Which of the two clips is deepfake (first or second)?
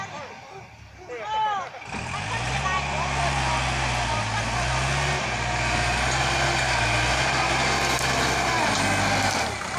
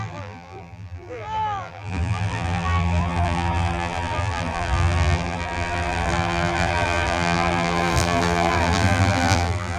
second